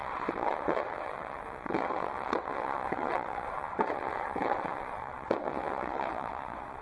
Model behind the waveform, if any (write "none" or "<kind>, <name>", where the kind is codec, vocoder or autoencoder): vocoder, WaveNeXt